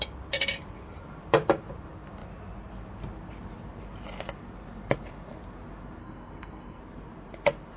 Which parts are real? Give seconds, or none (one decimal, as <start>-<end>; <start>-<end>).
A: 0.0-6.0; 6.8-7.8